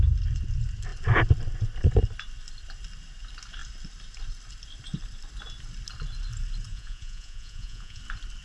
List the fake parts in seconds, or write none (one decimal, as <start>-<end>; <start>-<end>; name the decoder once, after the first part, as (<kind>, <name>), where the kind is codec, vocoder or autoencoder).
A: 6.7-8.0 (vocoder, Vocos)